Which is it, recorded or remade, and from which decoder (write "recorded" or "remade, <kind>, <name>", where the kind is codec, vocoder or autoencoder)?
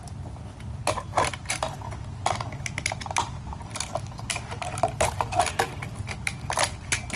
recorded